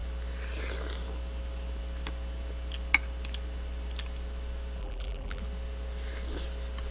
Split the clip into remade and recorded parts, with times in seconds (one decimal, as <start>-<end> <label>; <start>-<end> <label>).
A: 0.0-4.8 recorded; 4.8-5.4 remade; 5.4-6.9 recorded